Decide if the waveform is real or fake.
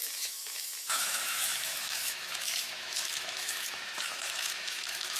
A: fake